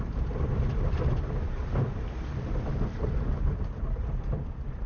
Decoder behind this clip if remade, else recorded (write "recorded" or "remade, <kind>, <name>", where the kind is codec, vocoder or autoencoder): remade, vocoder, BigVGAN v2